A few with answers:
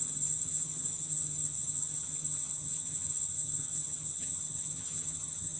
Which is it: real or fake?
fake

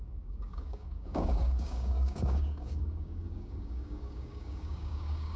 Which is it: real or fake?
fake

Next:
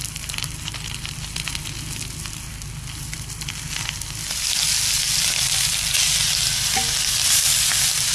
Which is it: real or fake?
real